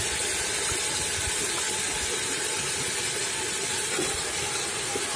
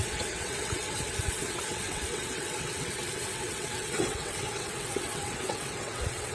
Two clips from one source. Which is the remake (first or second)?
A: second